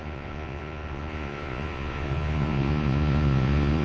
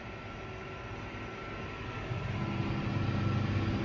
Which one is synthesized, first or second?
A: first